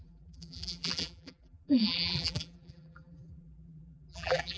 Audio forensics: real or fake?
fake